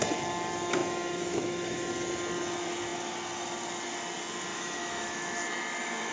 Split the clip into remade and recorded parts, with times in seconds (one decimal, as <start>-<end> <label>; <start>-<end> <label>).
0.0-0.8 recorded; 0.8-1.9 remade; 1.9-4.5 recorded; 4.5-6.1 remade